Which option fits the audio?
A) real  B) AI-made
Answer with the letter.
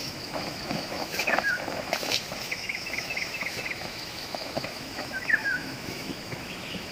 B